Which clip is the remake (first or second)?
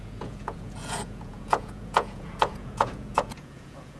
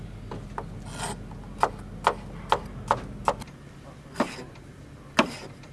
first